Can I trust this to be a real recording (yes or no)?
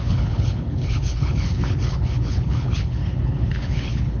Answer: no